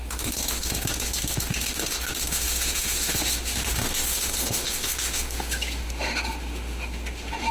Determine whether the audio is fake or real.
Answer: fake